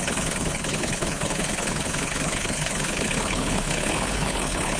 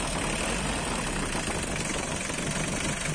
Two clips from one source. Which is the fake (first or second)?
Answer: first